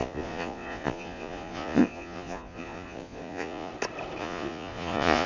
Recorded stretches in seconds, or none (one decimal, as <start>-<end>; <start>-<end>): 3.7-4.2